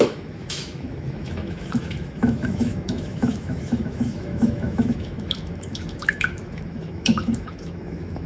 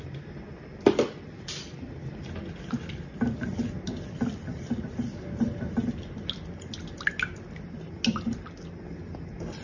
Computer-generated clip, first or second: first